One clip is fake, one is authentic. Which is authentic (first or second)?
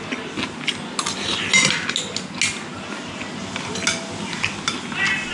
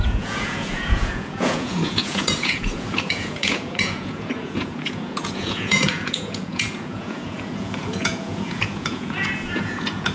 first